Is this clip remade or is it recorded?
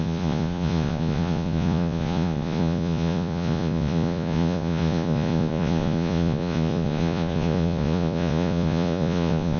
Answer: remade